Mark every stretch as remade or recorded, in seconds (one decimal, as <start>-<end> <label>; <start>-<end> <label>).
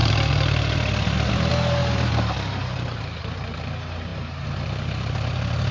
0.0-5.7 recorded